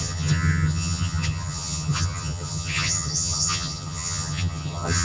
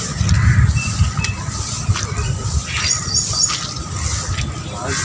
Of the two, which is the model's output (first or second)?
first